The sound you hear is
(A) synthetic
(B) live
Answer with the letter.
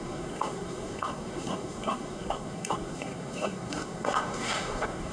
A